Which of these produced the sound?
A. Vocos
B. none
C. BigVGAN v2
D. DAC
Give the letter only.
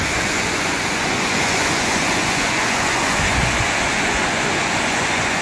A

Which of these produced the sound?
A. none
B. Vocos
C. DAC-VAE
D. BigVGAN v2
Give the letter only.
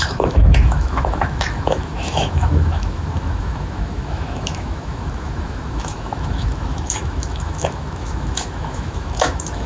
C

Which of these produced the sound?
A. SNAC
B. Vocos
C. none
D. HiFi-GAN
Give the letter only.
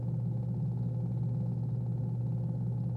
C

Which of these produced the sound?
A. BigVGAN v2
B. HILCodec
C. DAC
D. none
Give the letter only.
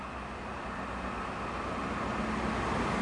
D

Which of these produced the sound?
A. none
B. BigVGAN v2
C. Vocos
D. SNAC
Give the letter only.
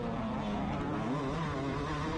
A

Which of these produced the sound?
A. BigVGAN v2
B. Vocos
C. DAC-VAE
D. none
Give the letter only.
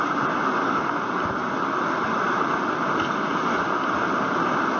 D